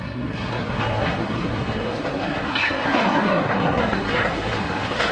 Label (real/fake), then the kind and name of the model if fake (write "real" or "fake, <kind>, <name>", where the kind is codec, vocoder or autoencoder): fake, codec, SNAC